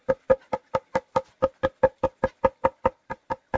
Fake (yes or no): no